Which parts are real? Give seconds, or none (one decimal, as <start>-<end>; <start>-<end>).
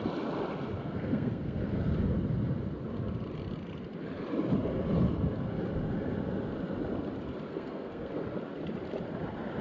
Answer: 0.0-0.8; 1.9-7.5; 8.1-9.6